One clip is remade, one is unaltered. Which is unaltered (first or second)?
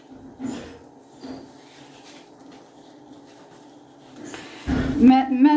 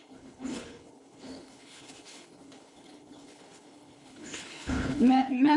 first